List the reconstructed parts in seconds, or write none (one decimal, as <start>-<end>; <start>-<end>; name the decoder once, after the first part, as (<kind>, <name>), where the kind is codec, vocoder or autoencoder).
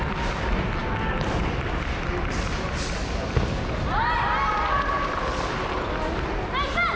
none